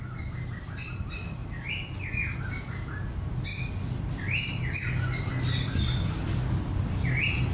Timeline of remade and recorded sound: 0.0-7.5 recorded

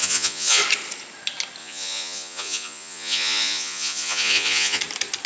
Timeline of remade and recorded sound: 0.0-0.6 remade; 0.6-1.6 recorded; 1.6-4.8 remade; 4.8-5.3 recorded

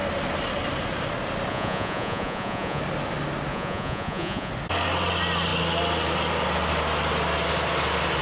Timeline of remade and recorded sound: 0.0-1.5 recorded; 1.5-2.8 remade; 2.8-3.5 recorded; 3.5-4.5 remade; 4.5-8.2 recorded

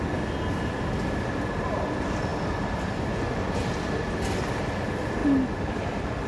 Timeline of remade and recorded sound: 0.0-6.3 recorded